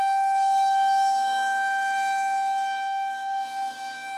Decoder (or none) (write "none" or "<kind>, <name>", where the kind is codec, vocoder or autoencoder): autoencoder, DAC-VAE